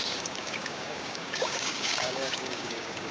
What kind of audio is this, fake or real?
fake